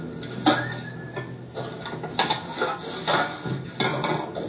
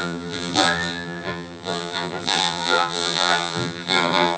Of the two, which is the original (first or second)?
first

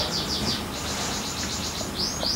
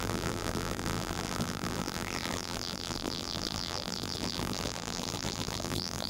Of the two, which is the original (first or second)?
first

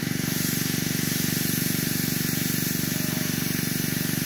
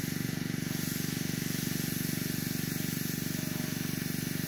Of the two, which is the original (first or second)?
second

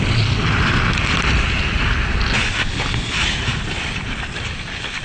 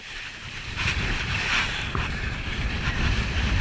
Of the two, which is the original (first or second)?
first